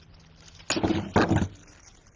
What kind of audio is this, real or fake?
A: real